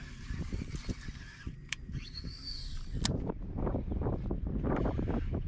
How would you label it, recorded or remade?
recorded